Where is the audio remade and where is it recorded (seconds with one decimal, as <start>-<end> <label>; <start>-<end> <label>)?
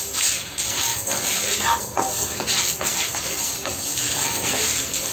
0.0-5.1 remade